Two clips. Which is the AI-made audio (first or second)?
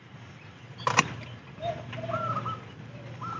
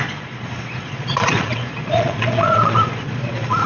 second